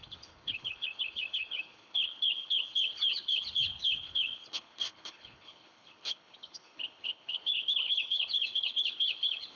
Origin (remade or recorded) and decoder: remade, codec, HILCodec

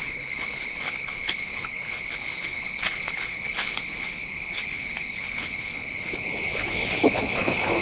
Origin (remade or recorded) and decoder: remade, codec, HILCodec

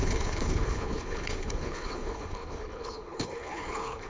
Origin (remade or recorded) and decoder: remade, codec, HILCodec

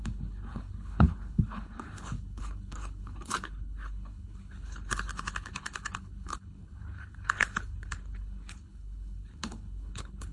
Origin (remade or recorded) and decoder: remade, codec, HILCodec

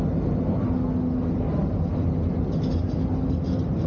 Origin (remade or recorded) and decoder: recorded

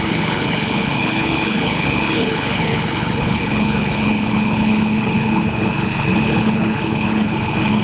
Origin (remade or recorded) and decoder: remade, codec, HILCodec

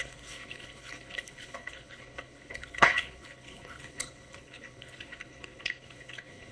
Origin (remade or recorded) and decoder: remade, codec, HILCodec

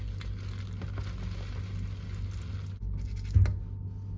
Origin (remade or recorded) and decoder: recorded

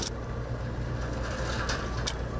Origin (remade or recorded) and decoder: recorded